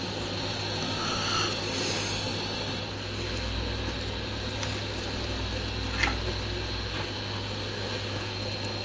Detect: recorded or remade recorded